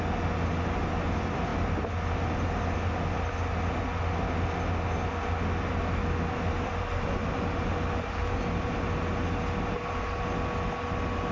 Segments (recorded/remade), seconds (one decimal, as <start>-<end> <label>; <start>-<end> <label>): 0.0-6.0 recorded; 6.0-6.5 remade; 6.5-11.3 recorded